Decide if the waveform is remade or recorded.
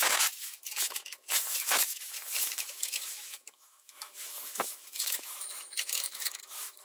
remade